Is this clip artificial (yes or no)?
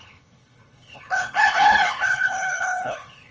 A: yes